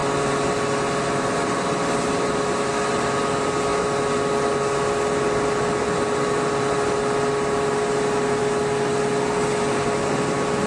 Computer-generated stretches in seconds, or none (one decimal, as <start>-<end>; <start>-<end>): none